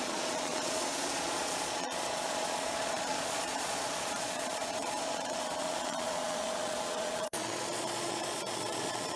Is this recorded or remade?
remade